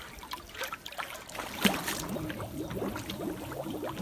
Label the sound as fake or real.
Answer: real